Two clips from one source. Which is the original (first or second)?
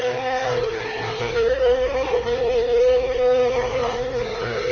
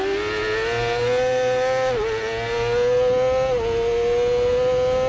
second